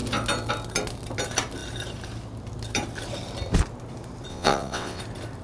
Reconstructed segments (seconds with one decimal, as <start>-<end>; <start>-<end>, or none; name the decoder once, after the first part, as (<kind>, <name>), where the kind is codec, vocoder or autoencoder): 4.3-5.0 (vocoder, WaveNeXt)